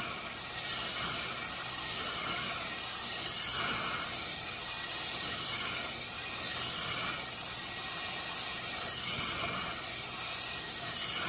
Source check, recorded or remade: recorded